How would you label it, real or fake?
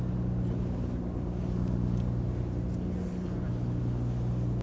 real